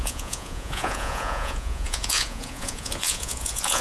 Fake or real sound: fake